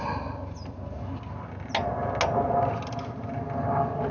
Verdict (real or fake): real